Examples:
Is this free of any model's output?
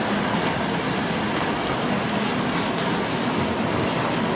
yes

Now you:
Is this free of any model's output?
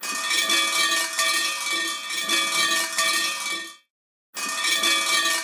yes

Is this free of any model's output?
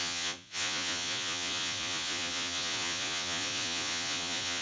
no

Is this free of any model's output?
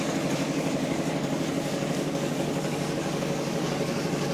no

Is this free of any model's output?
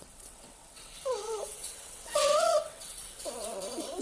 no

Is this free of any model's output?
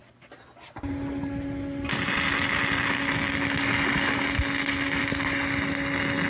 yes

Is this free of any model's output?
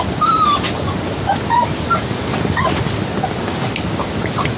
yes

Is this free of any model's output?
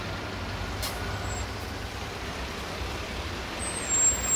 yes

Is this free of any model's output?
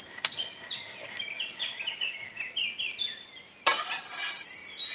yes